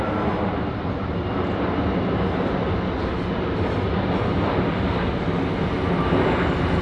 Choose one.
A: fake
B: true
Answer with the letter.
B